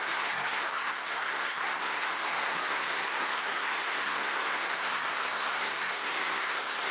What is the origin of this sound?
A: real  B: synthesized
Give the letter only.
B